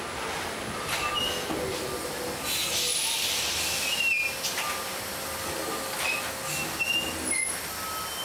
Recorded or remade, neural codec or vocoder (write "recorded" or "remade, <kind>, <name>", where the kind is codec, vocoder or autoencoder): recorded